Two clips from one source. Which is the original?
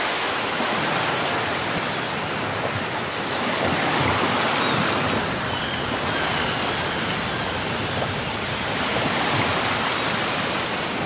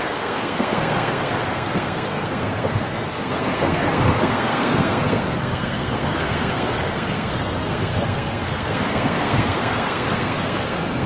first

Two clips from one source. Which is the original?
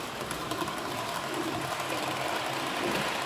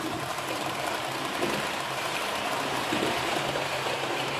first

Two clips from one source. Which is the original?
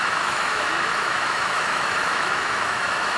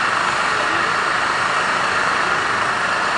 second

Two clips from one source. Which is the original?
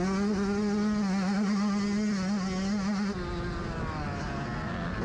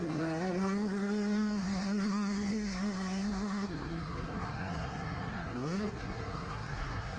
first